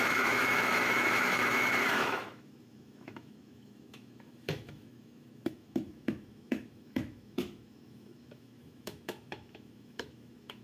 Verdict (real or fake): fake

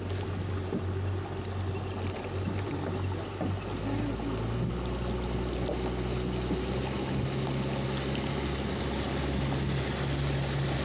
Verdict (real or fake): real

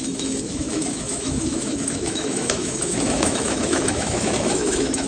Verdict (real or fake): fake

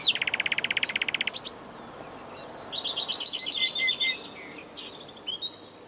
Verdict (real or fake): real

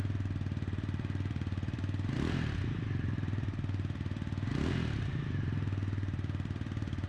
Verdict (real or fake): fake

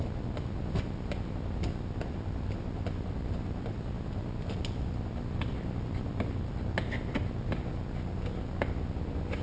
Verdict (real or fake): real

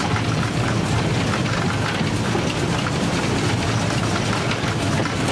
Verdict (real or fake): real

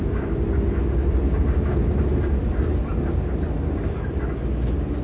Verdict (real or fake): real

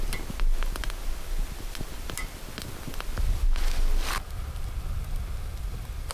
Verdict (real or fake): real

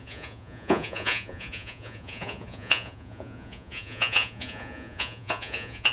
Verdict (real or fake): fake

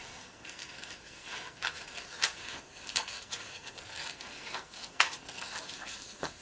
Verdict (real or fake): fake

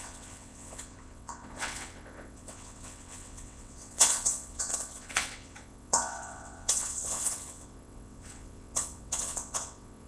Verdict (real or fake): fake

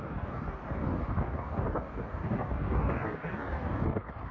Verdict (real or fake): fake